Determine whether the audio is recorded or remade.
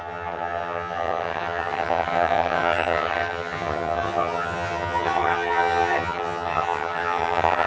remade